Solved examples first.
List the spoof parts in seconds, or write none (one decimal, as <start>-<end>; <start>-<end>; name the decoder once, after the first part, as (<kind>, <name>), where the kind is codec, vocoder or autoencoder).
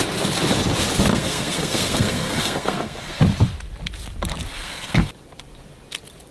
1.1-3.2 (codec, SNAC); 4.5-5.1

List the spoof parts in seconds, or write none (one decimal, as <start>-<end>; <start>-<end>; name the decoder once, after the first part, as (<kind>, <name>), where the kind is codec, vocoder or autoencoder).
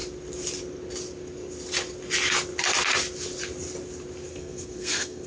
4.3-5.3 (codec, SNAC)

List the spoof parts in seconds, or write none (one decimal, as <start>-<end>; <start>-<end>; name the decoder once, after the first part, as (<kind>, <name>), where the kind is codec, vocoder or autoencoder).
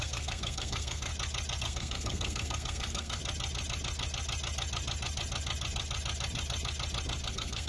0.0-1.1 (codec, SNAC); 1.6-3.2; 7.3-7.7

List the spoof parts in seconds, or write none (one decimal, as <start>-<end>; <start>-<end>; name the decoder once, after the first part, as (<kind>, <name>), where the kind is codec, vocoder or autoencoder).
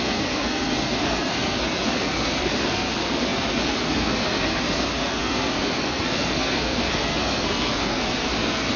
0.0-8.8 (codec, SNAC)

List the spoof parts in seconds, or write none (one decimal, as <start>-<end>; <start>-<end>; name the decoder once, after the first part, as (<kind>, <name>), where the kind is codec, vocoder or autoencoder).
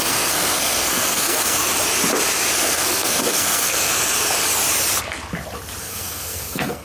0.0-1.6 (codec, SNAC); 2.6-3.9; 5.8-6.8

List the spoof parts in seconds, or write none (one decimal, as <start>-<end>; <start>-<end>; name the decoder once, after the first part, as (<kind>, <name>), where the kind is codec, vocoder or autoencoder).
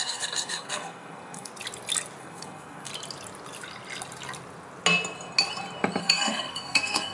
0.0-1.5 (codec, SNAC); 2.2-2.9; 6.0-7.1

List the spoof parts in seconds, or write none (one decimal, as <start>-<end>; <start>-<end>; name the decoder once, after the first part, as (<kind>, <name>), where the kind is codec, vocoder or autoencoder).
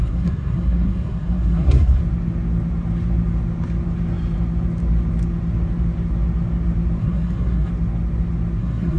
0.0-2.0 (codec, SNAC); 7.0-7.7; 8.6-9.0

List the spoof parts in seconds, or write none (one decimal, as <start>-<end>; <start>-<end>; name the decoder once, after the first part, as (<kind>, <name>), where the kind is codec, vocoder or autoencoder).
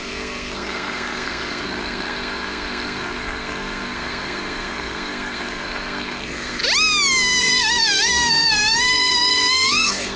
0.0-6.6 (codec, SNAC); 7.4-10.2